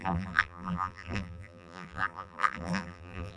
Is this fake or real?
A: fake